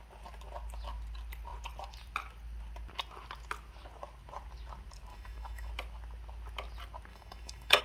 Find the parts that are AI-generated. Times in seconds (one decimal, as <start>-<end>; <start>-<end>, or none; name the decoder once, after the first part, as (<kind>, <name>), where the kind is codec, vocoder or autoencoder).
5.1-5.7 (autoencoder, DAC-VAE); 7.1-7.8